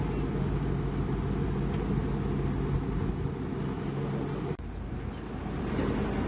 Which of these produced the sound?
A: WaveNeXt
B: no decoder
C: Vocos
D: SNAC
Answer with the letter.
B